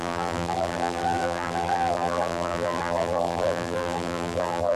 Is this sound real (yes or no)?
no